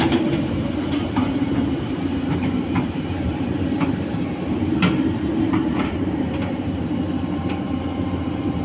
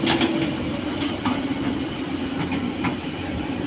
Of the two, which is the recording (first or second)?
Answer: second